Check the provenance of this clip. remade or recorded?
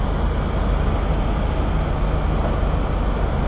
recorded